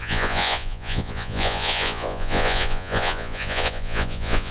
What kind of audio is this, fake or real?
fake